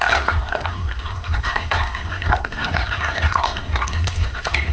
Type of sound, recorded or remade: remade